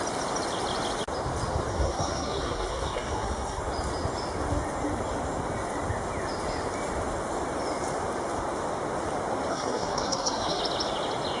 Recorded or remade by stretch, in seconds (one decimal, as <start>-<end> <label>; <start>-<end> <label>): 0.0-1.7 recorded; 1.7-3.6 remade; 3.6-9.5 recorded; 9.5-10.6 remade; 10.6-11.4 recorded